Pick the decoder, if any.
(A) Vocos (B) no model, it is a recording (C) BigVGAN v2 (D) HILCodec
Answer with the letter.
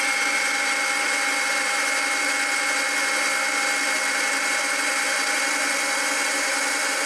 B